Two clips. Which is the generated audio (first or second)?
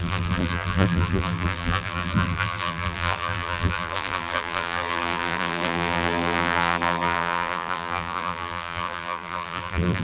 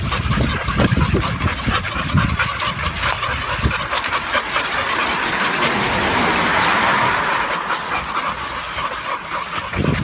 first